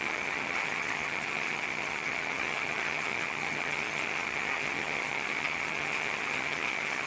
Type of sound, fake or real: fake